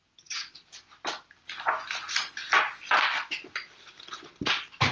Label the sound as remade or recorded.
recorded